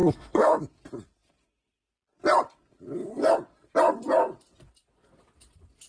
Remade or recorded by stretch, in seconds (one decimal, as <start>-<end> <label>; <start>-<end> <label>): 0.0-0.6 remade; 0.6-5.9 recorded